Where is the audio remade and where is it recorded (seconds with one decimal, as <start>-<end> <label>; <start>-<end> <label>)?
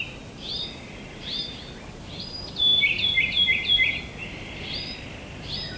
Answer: 0.0-5.8 recorded